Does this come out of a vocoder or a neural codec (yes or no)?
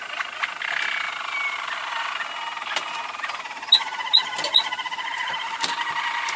no